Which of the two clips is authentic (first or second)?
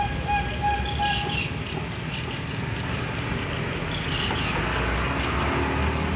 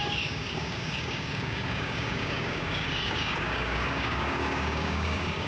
first